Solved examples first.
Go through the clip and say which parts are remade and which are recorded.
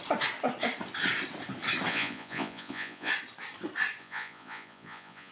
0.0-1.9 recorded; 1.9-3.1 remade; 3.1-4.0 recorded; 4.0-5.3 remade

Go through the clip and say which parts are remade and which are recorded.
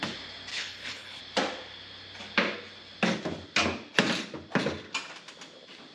0.0-0.5 recorded; 0.5-1.2 remade; 1.2-5.9 recorded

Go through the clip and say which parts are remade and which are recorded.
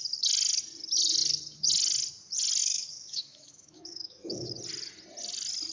0.0-2.6 recorded; 2.6-4.5 remade; 4.5-5.7 recorded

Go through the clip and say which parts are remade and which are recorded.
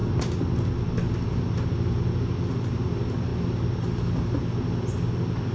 0.0-5.5 recorded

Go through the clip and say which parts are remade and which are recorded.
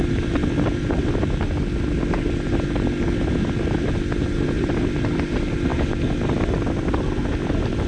0.0-7.9 recorded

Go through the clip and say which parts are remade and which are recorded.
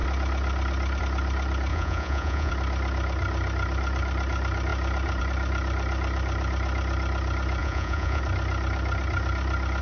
0.0-1.7 recorded; 1.7-2.5 remade; 2.5-7.6 recorded; 7.6-8.2 remade; 8.2-9.8 recorded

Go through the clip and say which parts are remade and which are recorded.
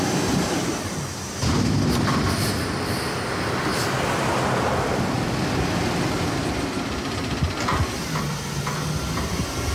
0.0-9.7 recorded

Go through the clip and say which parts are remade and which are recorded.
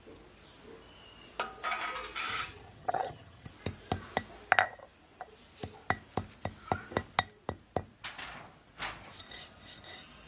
0.0-2.3 recorded; 2.3-3.5 remade; 3.5-10.3 recorded